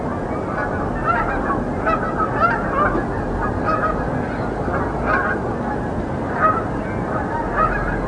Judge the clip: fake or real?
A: real